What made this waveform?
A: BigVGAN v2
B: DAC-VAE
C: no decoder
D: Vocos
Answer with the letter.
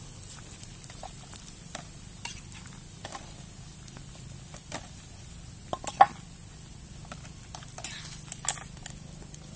C